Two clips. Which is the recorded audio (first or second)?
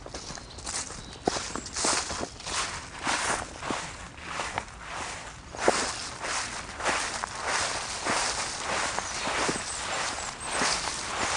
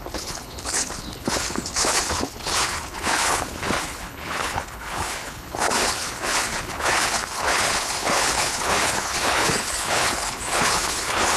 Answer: first